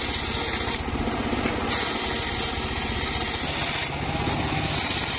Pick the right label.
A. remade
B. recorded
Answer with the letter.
B